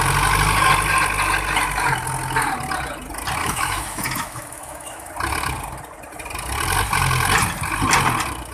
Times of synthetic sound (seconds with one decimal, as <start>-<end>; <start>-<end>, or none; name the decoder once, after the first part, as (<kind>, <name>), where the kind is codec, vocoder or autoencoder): 3.4-5.1 (autoencoder, DAC-VAE)